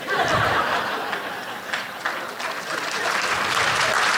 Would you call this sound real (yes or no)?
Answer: yes